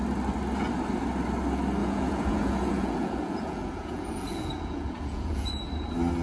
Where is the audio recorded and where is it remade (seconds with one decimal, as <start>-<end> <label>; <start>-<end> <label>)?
0.0-1.8 recorded; 1.8-5.5 remade; 5.5-6.2 recorded